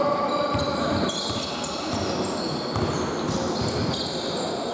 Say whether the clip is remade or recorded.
recorded